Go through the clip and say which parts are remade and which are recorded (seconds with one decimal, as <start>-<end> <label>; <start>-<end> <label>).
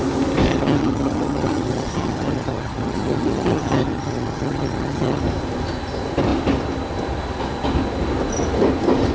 0.0-0.5 recorded; 0.5-5.2 remade; 5.2-9.1 recorded